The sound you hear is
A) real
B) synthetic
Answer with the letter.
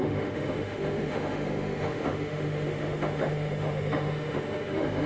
B